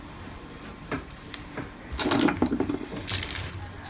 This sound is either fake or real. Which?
fake